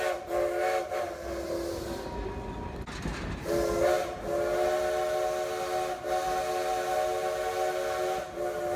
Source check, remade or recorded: recorded